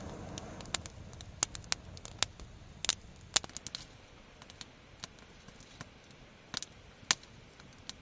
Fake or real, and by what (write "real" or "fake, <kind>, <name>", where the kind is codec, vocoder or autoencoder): real